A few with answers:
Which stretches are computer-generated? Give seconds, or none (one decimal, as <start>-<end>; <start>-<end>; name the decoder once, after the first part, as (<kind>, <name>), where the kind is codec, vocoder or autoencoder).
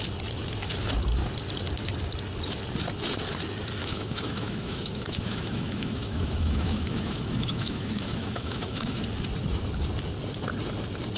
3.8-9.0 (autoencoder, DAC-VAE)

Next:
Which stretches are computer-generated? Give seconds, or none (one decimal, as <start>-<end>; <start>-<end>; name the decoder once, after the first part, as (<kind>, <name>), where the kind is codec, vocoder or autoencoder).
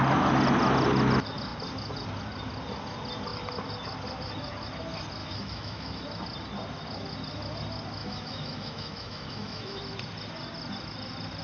5.2-6.0 (autoencoder, DAC-VAE); 8.0-9.8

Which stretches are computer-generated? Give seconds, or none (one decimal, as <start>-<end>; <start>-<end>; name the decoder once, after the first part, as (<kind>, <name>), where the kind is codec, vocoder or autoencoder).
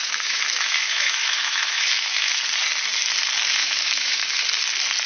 0.0-2.4 (autoencoder, DAC-VAE); 3.6-4.2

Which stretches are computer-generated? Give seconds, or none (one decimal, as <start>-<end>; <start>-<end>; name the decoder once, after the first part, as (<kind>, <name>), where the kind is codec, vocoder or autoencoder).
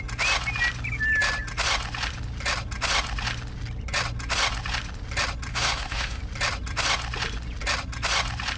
5.5-6.2 (autoencoder, DAC-VAE)